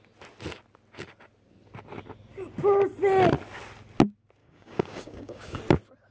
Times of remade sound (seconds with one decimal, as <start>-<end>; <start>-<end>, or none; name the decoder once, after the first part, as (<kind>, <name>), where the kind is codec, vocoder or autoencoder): 4.4-5.6 (codec, DAC)

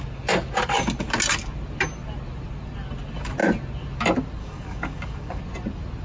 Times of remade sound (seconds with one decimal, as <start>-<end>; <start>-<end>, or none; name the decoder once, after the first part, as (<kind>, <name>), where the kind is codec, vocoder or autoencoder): 4.4-5.4 (codec, DAC)

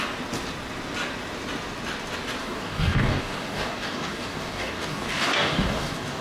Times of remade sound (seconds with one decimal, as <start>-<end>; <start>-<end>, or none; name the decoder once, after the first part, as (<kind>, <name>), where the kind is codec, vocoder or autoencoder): 2.4-6.2 (codec, DAC)

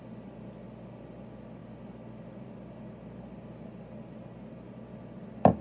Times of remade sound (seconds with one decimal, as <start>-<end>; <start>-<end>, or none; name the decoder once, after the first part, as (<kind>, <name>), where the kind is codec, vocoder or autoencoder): none